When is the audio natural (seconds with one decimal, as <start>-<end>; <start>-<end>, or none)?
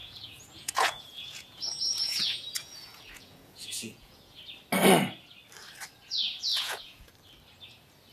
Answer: 4.4-6.5; 7.1-8.1